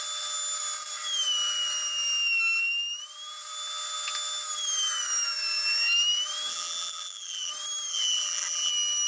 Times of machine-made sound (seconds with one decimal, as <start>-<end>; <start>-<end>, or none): 6.5-7.5; 7.9-8.7